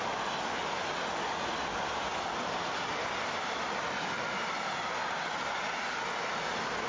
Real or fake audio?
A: real